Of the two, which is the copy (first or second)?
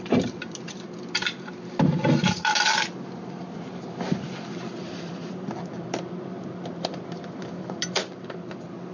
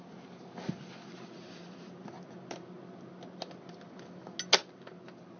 first